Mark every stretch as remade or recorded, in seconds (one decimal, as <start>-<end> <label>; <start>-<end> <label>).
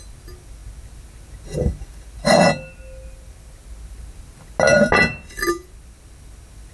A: 0.0-6.7 recorded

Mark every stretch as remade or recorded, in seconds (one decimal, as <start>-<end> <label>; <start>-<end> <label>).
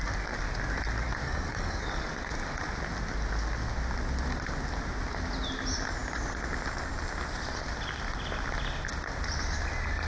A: 0.0-1.2 recorded; 1.2-2.3 remade; 2.3-10.1 recorded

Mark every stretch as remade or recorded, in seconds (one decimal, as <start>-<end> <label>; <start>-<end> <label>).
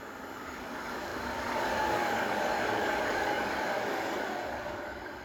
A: 0.0-5.2 remade